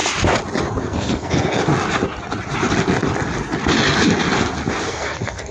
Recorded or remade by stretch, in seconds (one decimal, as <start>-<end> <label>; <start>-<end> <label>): 0.0-0.8 recorded; 0.8-1.6 remade; 1.6-4.9 recorded; 4.9-5.5 remade